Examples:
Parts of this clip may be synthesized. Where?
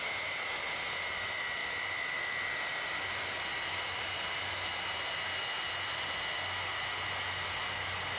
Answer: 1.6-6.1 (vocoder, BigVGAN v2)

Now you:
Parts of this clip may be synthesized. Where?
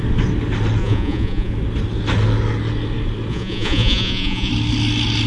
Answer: 0.8-1.5 (vocoder, Vocos); 3.3-4.5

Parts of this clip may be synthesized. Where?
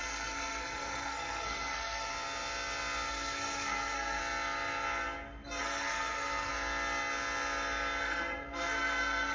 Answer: 0.0-2.1 (codec, SNAC); 3.1-4.2; 5.6-6.5; 8.0-9.3